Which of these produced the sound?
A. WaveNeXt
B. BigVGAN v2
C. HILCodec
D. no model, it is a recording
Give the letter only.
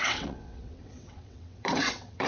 A